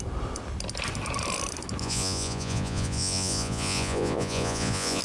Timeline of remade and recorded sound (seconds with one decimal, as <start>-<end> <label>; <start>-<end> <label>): 0.0-1.8 recorded; 1.8-5.0 remade